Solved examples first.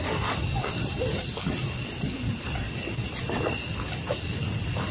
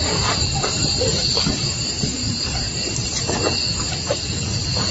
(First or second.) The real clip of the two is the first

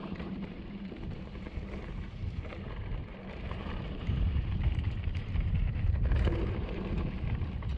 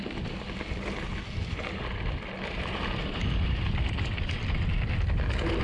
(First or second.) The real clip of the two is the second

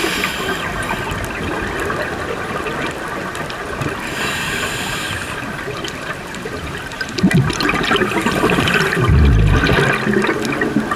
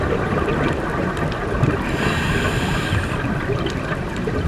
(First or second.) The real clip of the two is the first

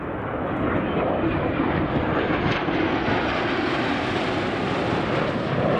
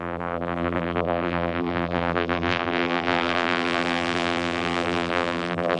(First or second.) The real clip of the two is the first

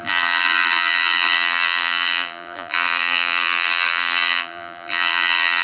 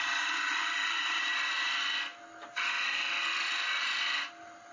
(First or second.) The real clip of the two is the second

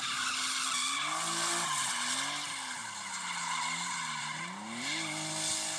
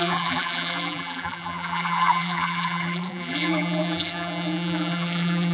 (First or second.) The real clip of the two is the first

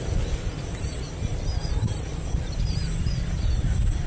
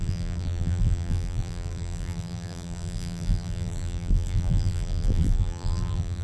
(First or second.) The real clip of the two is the first